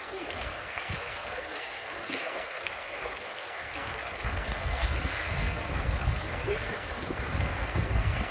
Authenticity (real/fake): fake